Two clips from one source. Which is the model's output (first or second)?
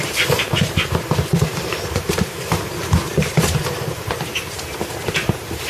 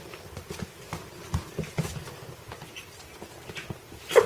first